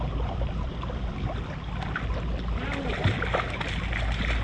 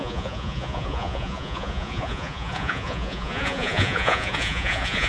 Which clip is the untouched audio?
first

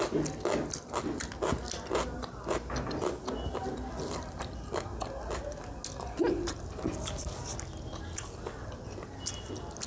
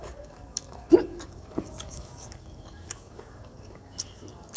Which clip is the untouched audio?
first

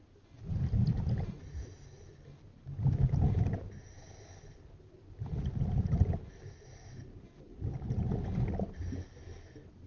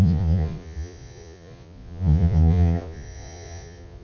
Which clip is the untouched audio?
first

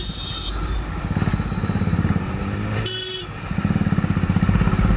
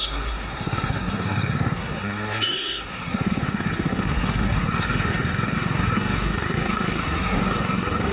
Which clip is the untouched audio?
first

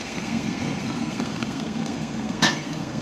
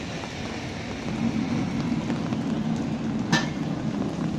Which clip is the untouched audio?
second